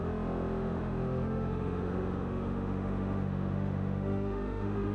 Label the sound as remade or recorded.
remade